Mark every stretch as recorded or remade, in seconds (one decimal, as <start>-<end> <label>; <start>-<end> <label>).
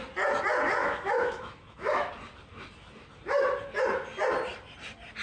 0.0-0.8 recorded; 0.8-2.1 remade; 2.1-5.2 recorded